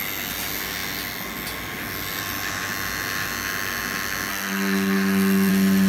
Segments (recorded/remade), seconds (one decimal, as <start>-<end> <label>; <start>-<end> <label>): 0.0-4.3 recorded; 4.3-5.5 remade; 5.5-5.9 recorded

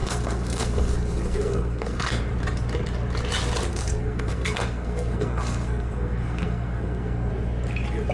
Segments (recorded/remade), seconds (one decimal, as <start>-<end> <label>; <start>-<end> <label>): 0.0-2.2 remade; 2.2-3.7 recorded; 3.7-7.3 remade; 7.3-8.1 recorded

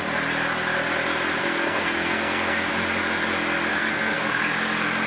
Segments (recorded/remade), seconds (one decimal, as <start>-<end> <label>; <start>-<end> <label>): 0.0-1.4 recorded; 1.4-2.7 remade; 2.7-3.7 recorded; 3.7-4.4 remade; 4.4-5.1 recorded

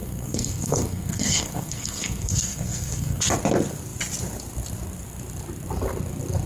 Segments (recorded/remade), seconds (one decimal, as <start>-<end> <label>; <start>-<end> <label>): 0.0-3.3 remade; 3.3-6.5 recorded

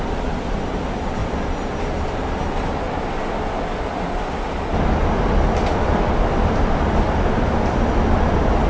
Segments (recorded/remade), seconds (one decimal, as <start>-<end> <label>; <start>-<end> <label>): 0.0-8.7 recorded

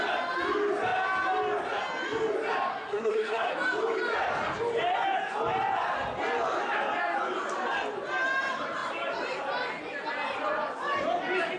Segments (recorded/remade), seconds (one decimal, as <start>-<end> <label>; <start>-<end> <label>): 0.0-2.7 recorded; 2.7-3.5 remade; 3.5-11.6 recorded

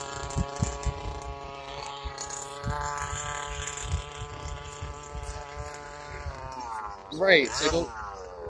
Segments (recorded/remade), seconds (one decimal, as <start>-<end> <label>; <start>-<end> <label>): 0.0-1.6 recorded; 1.6-2.1 remade; 2.1-8.5 recorded

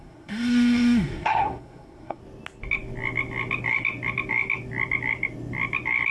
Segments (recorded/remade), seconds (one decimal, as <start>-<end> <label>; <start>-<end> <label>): 0.0-2.2 remade; 2.2-6.1 recorded